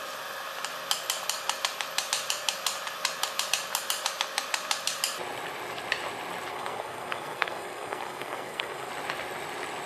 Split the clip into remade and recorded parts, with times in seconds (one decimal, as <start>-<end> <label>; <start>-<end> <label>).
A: 0.0-6.5 recorded; 6.5-8.9 remade; 8.9-9.9 recorded